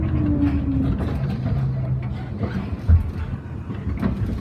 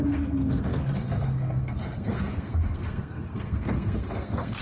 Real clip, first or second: first